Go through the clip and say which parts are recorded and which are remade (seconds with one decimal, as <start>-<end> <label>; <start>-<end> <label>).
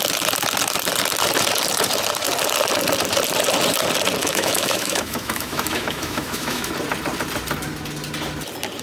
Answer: 0.0-4.2 recorded; 4.2-6.7 remade; 6.7-8.8 recorded